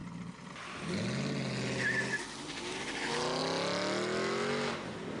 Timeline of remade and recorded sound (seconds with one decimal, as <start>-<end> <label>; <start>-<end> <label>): 0.0-5.2 recorded